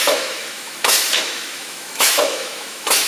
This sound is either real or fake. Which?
fake